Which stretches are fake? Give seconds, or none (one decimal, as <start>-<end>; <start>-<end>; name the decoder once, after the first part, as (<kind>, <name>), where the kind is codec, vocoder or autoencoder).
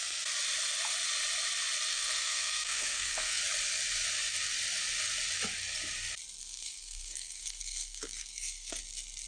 1.9-3.4 (codec, SNAC); 6.4-8.8